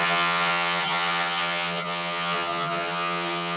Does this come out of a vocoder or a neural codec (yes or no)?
yes